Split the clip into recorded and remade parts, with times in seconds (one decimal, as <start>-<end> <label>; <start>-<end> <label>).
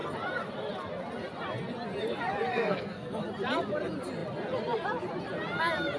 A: 0.0-2.5 recorded; 2.5-3.2 remade; 3.2-6.0 recorded